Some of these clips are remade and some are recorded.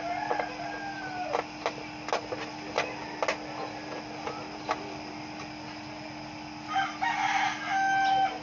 recorded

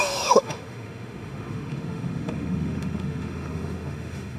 remade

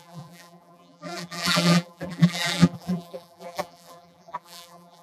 remade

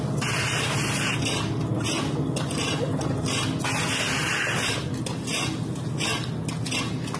recorded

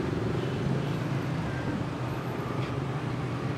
remade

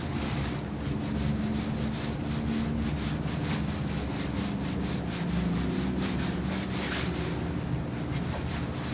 remade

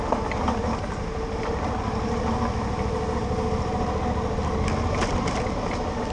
recorded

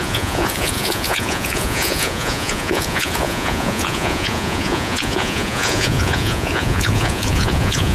remade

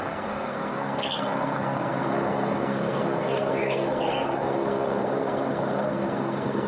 remade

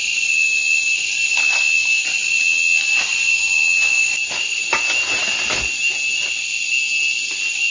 recorded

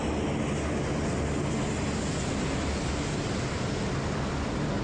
recorded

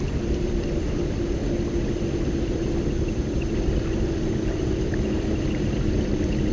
remade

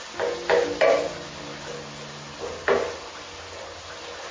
recorded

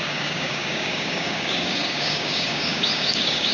remade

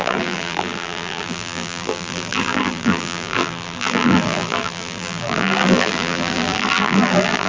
remade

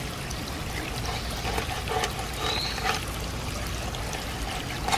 recorded